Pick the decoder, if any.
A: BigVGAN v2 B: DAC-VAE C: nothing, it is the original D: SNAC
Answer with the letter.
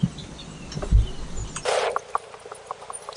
C